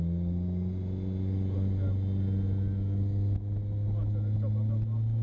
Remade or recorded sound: recorded